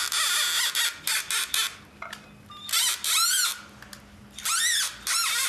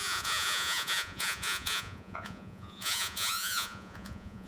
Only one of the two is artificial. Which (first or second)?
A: second